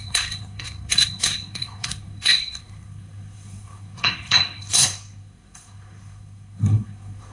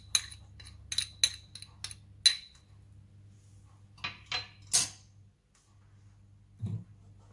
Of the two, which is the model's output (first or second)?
first